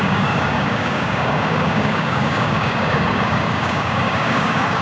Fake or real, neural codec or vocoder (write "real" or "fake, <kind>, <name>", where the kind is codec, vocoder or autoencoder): fake, codec, DAC